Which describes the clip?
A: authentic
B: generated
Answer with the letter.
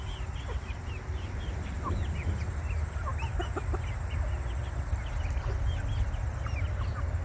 A